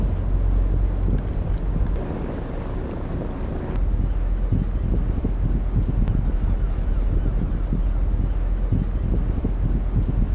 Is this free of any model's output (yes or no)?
yes